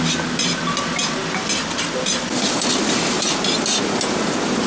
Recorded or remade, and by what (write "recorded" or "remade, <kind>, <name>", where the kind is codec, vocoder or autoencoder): recorded